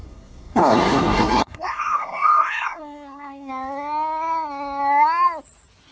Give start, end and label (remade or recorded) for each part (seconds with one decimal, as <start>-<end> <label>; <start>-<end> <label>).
0.0-3.5 remade; 3.5-5.9 recorded